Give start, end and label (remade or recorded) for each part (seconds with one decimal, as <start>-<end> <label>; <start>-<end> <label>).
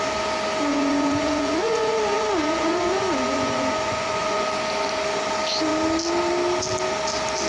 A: 0.0-0.7 recorded; 0.7-4.5 remade; 4.5-7.5 recorded